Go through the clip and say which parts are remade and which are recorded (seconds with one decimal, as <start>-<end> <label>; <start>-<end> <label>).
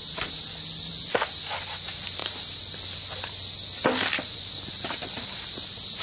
0.0-6.0 recorded